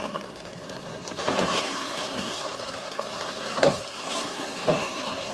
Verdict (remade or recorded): remade